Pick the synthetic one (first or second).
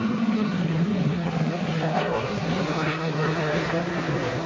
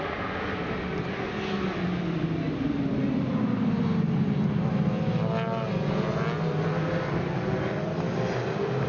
first